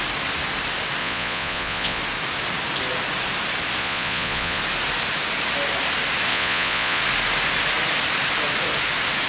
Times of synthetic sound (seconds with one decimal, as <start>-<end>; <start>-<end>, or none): 1.0-2.0; 3.8-4.6; 6.3-7.0